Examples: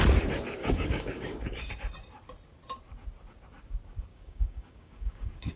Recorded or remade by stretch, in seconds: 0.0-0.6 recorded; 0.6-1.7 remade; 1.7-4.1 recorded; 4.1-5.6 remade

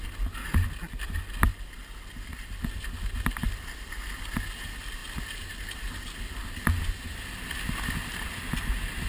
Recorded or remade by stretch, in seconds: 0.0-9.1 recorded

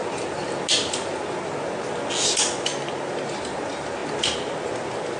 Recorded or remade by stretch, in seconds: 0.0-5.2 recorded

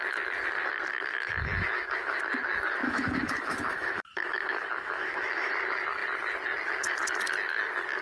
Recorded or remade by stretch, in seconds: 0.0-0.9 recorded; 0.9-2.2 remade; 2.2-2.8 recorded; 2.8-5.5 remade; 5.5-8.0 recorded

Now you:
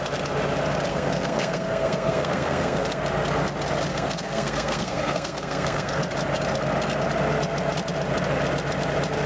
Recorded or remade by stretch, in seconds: 0.0-0.9 recorded; 0.9-3.0 remade; 3.0-3.9 recorded; 3.9-6.0 remade; 6.0-9.3 recorded